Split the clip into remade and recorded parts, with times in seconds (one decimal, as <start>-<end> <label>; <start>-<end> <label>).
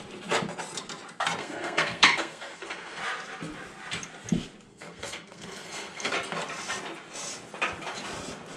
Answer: 0.0-1.4 recorded; 1.4-3.0 remade; 3.0-4.7 recorded; 4.7-6.1 remade; 6.1-8.6 recorded